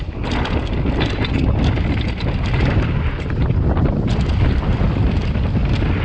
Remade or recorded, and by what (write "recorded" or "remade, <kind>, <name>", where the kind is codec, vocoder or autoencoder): recorded